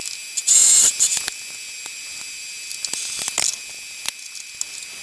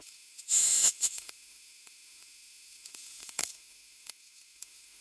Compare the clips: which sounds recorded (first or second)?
first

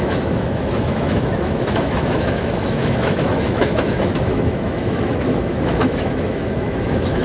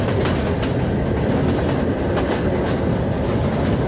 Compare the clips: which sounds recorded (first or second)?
second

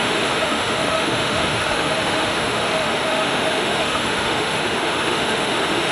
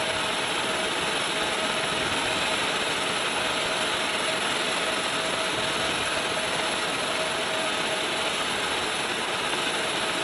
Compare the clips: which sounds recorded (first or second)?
second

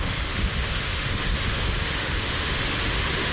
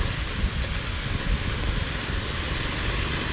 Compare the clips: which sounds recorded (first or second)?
second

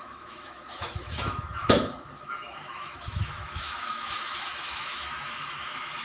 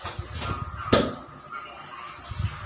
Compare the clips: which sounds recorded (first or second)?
second